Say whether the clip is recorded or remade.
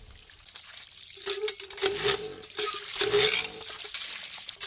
recorded